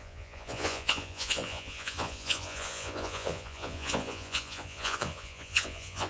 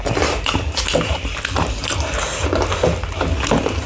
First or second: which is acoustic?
second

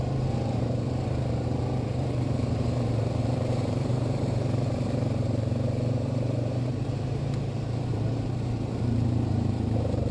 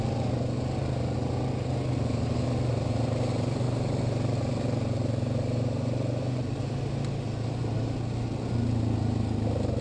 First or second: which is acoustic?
second